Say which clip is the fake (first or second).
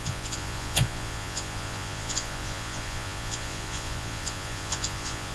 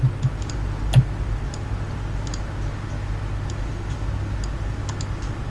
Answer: first